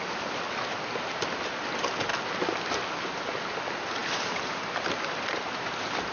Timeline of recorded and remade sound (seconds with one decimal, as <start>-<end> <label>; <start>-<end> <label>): 0.0-6.1 recorded

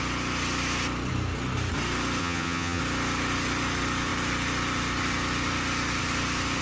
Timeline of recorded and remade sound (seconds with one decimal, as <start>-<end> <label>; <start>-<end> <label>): 0.0-2.2 recorded; 2.2-2.8 remade; 2.8-6.6 recorded

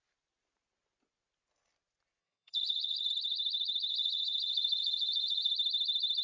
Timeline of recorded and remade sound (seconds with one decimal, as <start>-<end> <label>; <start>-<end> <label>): 0.0-2.2 recorded; 2.2-3.1 remade; 3.1-3.9 recorded; 3.9-5.5 remade; 5.5-6.2 recorded

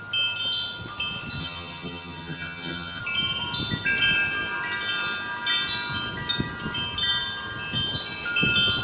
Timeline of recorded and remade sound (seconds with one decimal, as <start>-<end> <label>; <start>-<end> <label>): 0.0-1.4 recorded; 1.4-3.0 remade; 3.0-8.8 recorded

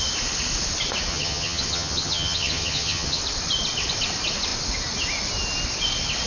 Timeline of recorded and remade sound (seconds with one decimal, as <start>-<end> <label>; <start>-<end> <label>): 0.0-1.1 recorded; 1.1-3.2 remade; 3.2-6.3 recorded

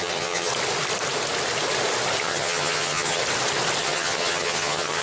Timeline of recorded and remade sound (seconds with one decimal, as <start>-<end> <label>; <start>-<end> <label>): 0.0-0.5 remade; 0.5-2.2 recorded; 2.2-3.2 remade; 3.2-3.8 recorded; 3.8-5.0 remade

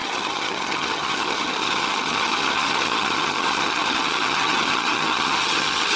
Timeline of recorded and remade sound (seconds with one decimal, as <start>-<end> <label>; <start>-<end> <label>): 0.0-6.0 remade